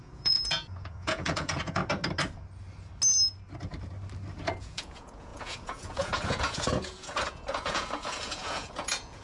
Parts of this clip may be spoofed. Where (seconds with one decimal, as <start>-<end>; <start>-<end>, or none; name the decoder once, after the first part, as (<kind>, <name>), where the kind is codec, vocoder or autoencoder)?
0.0-1.8 (vocoder, Vocos); 4.6-9.2